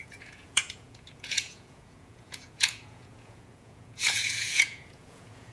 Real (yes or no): no